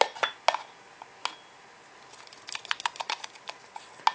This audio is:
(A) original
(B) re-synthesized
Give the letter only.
A